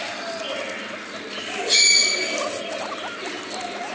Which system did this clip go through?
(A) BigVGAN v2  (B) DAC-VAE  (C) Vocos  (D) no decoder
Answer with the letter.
D